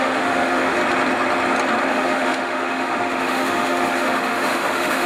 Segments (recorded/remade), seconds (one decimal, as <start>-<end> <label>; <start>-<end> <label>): 0.0-0.8 remade; 0.8-1.9 recorded; 1.9-5.1 remade